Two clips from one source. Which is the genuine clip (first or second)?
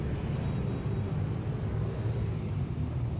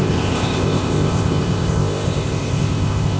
first